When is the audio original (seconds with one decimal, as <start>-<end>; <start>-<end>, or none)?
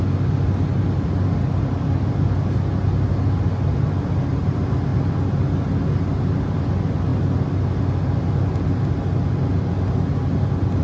0.0-10.8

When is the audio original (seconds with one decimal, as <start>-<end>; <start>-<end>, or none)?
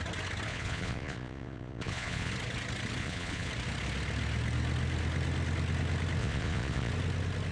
0.0-0.5; 2.3-3.0; 3.5-6.2; 6.9-7.5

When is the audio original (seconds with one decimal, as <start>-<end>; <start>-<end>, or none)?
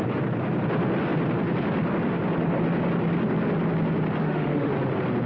0.0-4.2; 4.7-5.3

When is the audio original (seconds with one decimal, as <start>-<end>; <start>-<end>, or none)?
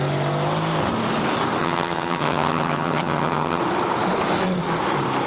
0.0-1.6; 3.6-5.3